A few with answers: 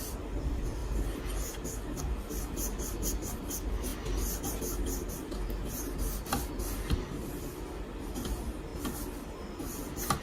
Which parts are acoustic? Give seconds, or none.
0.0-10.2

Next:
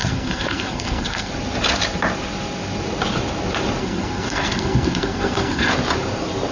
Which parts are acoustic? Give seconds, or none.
1.3-3.8; 5.7-6.5